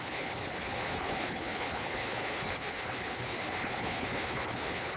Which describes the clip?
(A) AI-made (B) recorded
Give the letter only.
A